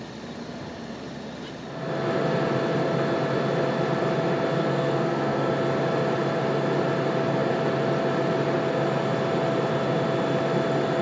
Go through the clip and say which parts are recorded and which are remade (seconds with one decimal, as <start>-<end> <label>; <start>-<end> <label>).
0.0-4.6 recorded; 4.6-5.5 remade; 5.5-11.0 recorded